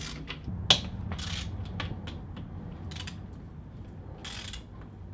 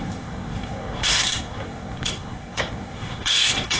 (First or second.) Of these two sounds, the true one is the first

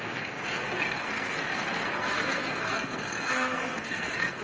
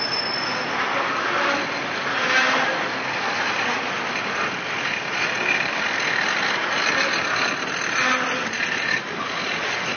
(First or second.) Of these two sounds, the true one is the second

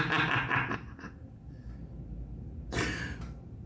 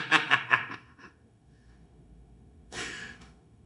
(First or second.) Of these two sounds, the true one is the first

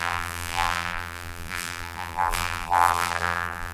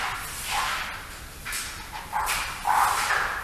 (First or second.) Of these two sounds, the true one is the second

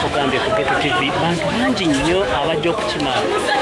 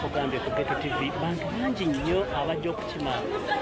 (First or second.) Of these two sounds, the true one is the second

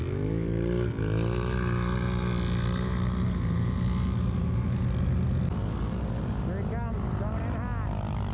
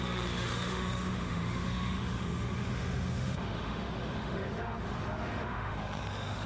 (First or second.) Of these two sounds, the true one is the first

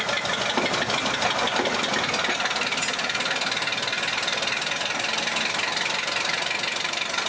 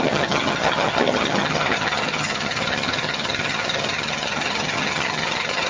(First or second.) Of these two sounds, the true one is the first